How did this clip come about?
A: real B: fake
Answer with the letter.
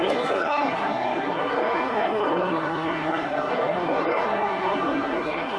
B